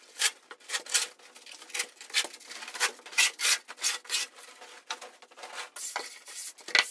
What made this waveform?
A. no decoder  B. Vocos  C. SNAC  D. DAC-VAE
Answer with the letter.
A